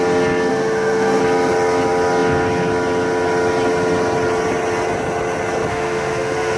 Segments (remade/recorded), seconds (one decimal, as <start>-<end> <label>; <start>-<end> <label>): 0.0-0.5 recorded; 0.5-1.2 remade; 1.2-5.7 recorded; 5.7-6.6 remade